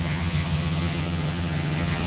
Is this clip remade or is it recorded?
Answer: remade